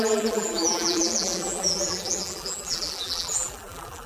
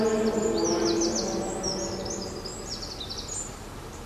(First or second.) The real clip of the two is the second